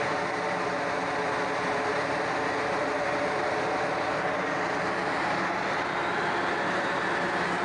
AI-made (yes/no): no